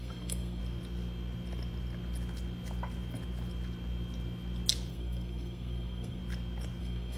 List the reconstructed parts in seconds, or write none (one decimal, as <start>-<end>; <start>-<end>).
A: 0.0-0.6; 4.9-6.2; 6.8-7.2